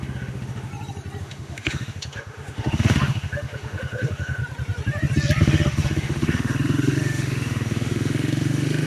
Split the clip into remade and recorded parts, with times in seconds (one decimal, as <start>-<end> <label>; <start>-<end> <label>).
0.0-0.7 remade; 0.7-1.2 recorded; 1.2-4.4 remade; 4.4-5.4 recorded; 5.4-8.9 remade